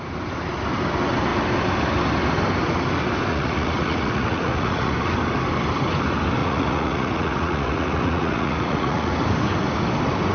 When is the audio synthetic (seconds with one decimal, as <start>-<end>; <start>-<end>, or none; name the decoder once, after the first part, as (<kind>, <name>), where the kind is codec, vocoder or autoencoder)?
3.3-4.9 (vocoder, Vocos); 6.4-9.1